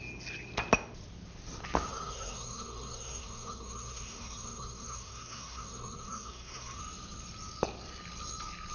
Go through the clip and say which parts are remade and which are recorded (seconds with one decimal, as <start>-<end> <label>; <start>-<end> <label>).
0.0-1.9 recorded; 1.9-6.8 remade; 6.8-8.7 recorded